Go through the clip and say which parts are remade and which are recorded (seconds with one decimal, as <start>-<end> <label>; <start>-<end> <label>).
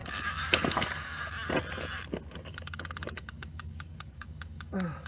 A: 0.0-1.3 remade; 1.3-2.5 recorded; 2.5-5.1 remade